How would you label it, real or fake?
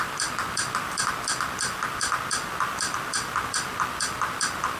fake